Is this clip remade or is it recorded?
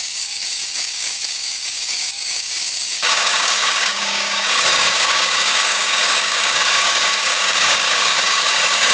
remade